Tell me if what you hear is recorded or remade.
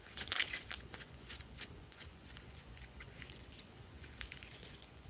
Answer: remade